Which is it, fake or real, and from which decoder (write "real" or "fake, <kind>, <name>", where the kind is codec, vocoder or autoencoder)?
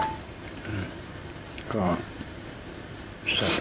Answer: fake, vocoder, BigVGAN v2